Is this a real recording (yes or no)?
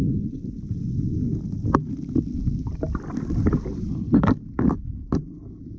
yes